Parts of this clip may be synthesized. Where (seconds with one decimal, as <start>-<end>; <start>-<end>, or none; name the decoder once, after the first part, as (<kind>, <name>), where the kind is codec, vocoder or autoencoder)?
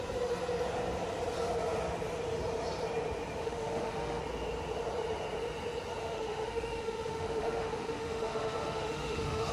3.4-4.2 (autoencoder, DAC-VAE); 6.0-9.5